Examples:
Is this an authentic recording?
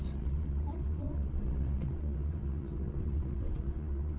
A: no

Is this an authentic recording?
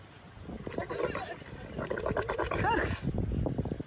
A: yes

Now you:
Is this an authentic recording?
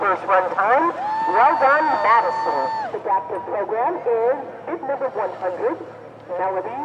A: yes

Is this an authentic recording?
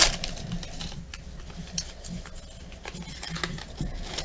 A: yes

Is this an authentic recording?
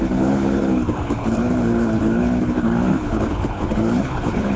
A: no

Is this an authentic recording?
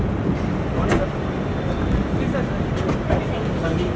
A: yes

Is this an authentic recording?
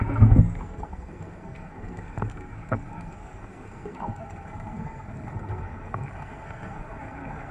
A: no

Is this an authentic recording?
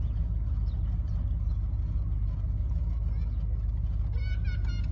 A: yes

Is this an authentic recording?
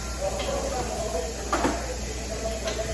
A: yes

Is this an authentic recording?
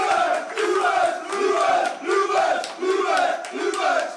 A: yes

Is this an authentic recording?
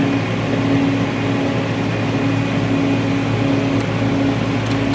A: yes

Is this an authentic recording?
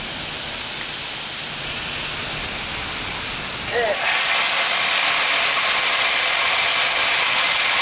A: yes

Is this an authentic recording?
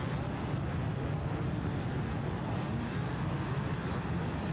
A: yes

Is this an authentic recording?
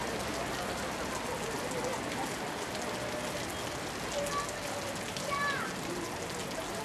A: yes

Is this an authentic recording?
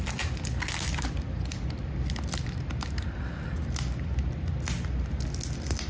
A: yes